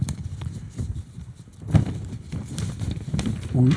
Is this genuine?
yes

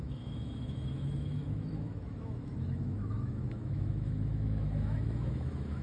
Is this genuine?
no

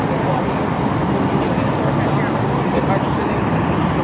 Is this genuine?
yes